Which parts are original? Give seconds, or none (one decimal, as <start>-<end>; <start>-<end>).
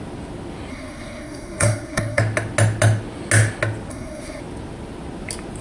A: 0.0-0.7; 2.2-3.9; 4.4-5.6